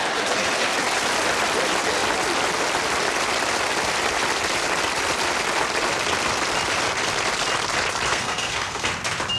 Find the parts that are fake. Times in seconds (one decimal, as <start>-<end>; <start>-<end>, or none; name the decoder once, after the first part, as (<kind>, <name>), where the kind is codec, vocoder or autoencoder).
8.1-8.9 (codec, SNAC)